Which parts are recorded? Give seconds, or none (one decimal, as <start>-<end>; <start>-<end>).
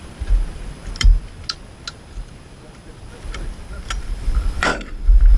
1.1-3.1; 4.7-5.4